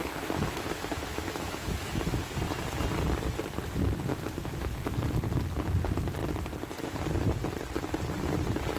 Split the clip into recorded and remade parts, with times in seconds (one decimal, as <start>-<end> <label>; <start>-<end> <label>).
0.0-2.3 remade; 2.3-4.1 recorded; 4.1-5.0 remade; 5.0-8.8 recorded